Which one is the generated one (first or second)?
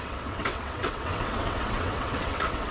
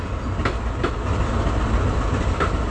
first